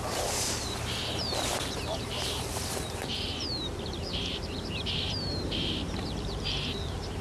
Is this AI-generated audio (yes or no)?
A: yes